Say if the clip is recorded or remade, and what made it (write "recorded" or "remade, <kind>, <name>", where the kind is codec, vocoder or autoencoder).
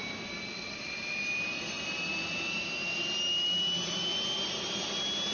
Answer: recorded